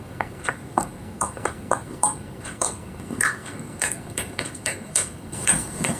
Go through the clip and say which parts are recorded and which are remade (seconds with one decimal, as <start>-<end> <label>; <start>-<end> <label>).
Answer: 0.0-6.0 remade